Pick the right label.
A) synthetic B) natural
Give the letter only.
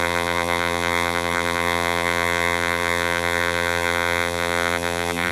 A